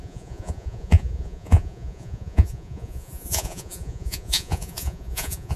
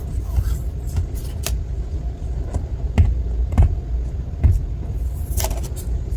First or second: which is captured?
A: second